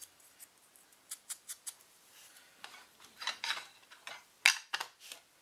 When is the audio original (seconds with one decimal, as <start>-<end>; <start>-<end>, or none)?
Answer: 0.0-0.9; 4.1-5.4